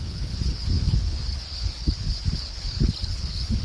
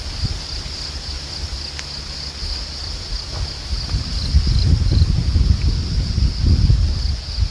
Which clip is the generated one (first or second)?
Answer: first